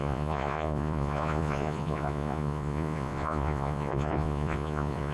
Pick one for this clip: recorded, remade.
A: remade